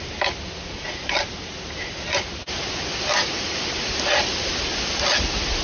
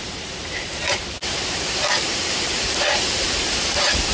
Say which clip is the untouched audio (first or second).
first